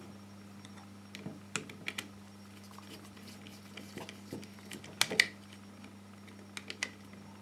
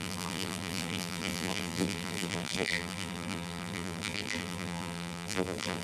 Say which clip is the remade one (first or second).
second